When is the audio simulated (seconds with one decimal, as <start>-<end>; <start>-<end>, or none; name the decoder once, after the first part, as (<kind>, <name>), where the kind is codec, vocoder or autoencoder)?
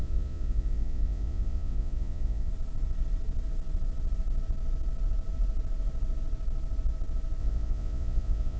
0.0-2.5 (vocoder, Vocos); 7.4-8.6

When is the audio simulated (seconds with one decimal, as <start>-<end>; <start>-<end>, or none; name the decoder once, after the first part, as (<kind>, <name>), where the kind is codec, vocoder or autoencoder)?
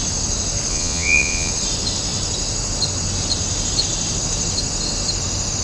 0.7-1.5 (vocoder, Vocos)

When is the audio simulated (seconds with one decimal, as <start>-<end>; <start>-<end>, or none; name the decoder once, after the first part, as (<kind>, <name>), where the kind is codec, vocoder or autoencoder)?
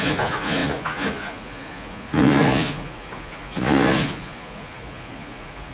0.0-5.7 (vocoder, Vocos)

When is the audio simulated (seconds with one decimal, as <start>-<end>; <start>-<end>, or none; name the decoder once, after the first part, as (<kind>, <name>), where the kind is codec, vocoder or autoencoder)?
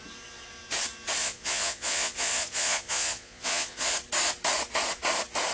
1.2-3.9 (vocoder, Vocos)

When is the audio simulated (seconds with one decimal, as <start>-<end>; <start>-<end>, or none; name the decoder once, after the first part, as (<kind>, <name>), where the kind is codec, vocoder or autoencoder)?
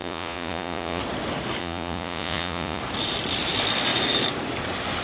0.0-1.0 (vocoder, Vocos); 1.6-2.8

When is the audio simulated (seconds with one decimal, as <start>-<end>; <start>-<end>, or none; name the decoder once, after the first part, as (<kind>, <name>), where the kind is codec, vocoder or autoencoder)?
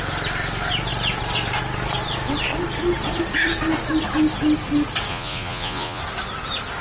5.1-6.0 (vocoder, Vocos)